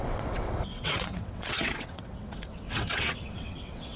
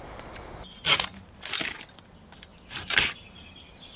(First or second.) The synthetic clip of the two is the first